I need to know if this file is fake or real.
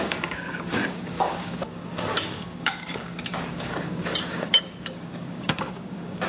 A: fake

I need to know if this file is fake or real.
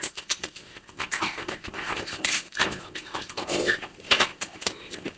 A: fake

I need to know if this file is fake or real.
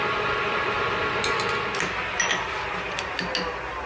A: real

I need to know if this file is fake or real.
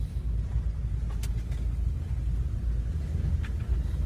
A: real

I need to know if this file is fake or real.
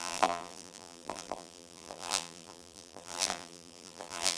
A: fake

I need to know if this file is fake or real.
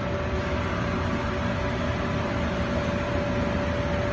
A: real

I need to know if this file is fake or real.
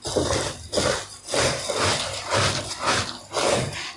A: real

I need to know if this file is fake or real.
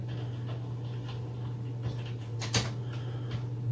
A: real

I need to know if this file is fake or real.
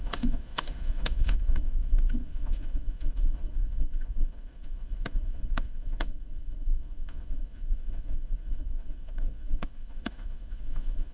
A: fake